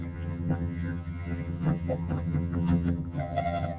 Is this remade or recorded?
remade